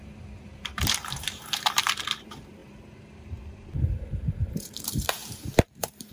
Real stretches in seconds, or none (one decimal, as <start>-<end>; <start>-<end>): none